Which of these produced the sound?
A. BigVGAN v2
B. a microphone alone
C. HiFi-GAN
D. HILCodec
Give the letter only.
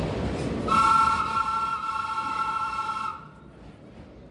B